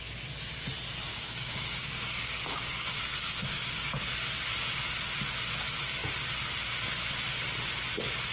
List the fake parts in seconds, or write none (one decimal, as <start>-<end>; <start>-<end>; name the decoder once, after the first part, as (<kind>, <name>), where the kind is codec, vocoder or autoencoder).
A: 1.1-4.1 (codec, DAC)